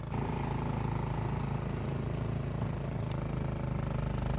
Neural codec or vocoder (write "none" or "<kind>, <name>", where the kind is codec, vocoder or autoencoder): none